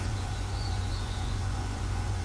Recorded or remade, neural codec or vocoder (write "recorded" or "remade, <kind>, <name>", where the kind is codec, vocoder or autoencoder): remade, vocoder, Vocos